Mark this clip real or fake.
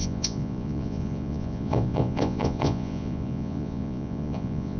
fake